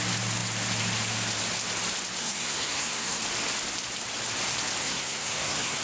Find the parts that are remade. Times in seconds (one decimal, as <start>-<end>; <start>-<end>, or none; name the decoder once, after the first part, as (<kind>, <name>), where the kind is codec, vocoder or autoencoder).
2.2-3.2 (codec, SNAC); 4.8-5.8